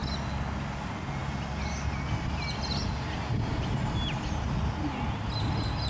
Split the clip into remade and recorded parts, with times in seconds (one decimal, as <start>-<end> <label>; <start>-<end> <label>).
0.0-5.9 recorded